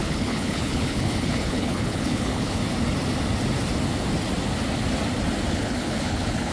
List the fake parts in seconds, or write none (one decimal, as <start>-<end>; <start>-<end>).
0.0-2.6; 5.5-6.5